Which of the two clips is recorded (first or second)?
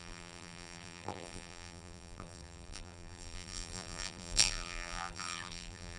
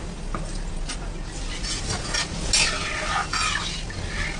second